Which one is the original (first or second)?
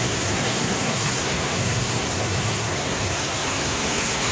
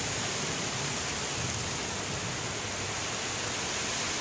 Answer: second